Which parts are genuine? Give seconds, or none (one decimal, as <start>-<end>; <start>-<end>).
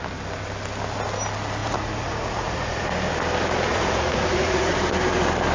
0.0-1.6; 2.9-3.7; 4.7-5.5